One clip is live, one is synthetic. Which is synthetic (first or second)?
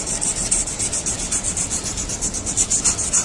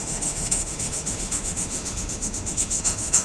second